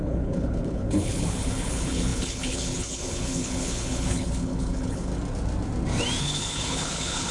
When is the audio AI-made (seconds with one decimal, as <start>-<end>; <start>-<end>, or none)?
0.0-5.1; 6.2-7.3